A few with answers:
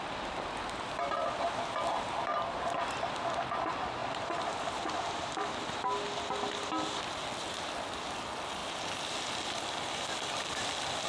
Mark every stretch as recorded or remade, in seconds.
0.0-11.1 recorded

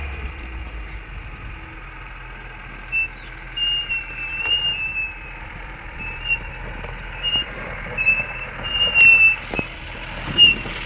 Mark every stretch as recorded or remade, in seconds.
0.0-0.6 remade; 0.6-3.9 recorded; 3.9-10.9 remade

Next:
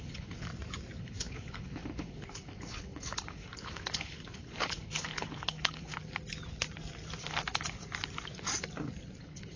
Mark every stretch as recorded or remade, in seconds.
0.0-0.5 remade; 0.5-1.0 recorded; 1.0-6.0 remade; 6.0-9.2 recorded; 9.2-9.6 remade